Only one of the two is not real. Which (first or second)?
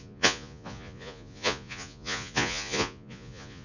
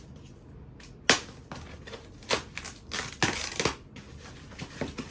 first